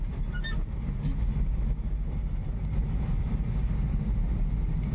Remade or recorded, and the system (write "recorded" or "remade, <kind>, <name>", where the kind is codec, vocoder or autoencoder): recorded